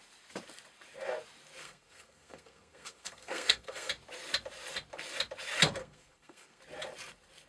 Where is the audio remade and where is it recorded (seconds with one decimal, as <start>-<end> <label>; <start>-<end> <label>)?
0.0-1.6 recorded; 1.6-3.9 remade; 3.9-5.8 recorded; 5.8-6.6 remade; 6.6-7.5 recorded